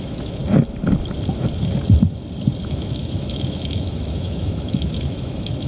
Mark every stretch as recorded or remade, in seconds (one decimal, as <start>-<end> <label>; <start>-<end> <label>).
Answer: 0.0-0.4 remade; 0.4-2.6 recorded; 2.6-5.7 remade